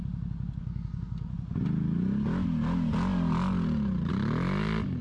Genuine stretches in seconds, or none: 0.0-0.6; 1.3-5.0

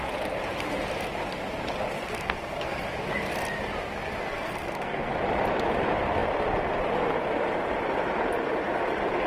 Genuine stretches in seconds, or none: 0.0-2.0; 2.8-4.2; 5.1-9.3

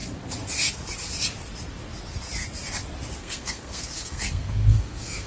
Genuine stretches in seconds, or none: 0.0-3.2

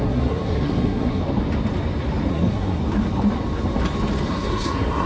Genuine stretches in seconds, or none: 1.2-2.3; 2.8-4.3